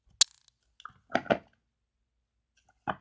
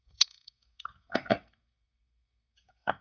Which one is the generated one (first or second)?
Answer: second